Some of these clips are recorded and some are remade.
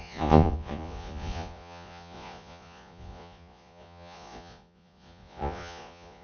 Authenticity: remade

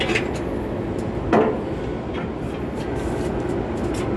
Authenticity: recorded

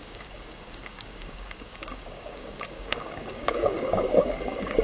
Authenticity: remade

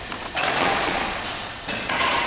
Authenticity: remade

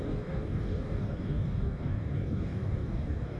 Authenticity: remade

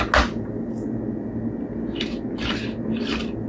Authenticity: recorded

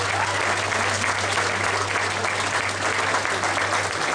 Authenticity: recorded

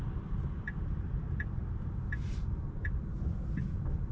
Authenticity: recorded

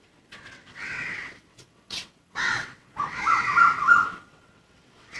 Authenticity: remade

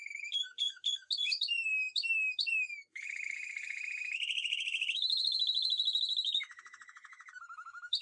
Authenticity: remade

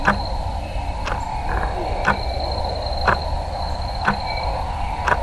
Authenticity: recorded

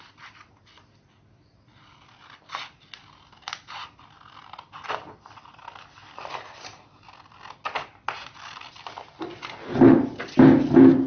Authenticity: recorded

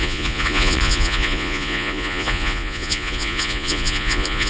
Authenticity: remade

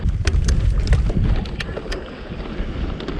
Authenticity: recorded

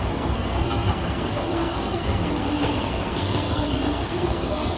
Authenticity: remade